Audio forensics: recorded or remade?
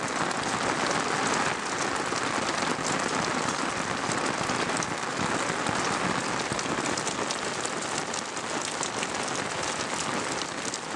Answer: recorded